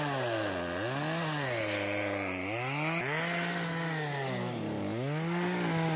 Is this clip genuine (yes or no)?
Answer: yes